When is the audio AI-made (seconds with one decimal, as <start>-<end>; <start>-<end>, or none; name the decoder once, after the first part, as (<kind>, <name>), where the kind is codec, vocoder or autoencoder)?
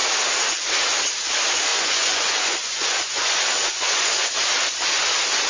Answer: 1.7-4.3 (vocoder, Vocos)